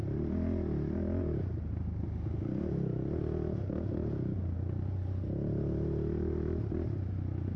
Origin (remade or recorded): recorded